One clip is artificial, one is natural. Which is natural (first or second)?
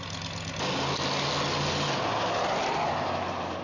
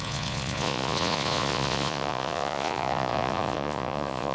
first